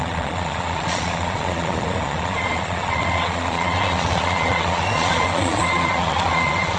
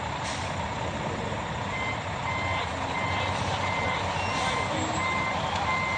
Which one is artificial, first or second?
first